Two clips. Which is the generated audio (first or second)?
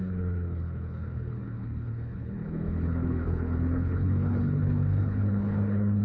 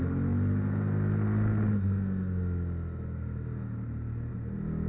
first